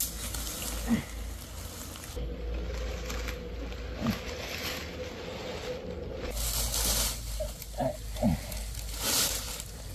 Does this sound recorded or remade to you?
recorded